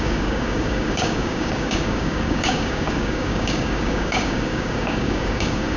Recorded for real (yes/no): no